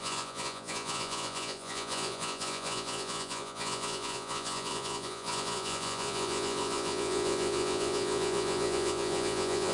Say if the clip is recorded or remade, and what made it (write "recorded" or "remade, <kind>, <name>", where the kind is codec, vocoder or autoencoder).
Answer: remade, vocoder, Vocos